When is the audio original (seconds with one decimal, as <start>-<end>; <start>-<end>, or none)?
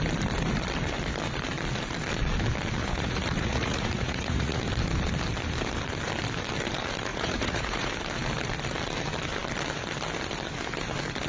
0.0-2.8; 4.6-7.1; 7.9-11.3